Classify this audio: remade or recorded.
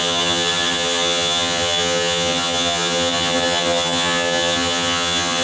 remade